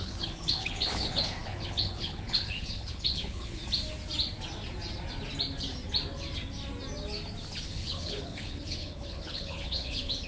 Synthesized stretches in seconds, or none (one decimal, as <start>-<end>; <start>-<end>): 0.0-3.6; 7.7-10.3